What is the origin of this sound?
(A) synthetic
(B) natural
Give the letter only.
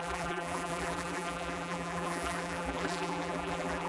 A